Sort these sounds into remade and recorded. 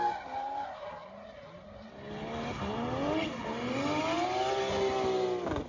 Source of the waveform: recorded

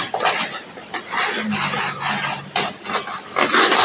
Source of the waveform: recorded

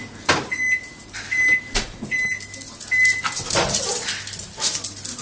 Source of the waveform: recorded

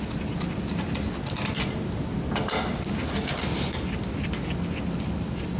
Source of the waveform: recorded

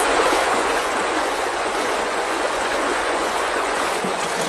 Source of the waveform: remade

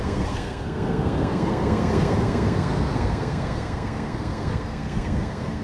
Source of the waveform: remade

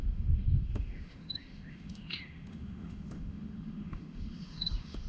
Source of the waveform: remade